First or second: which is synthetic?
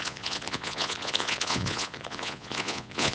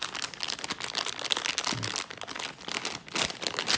first